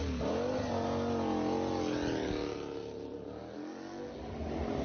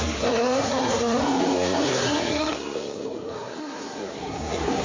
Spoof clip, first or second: second